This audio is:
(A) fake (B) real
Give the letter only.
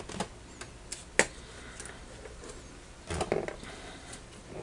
B